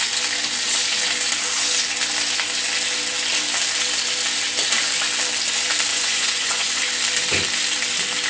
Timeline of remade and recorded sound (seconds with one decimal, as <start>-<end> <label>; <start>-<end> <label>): 0.0-5.9 recorded; 5.9-6.8 remade; 6.8-8.3 recorded